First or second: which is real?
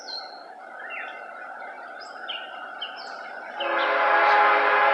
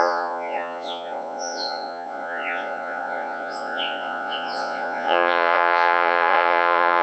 first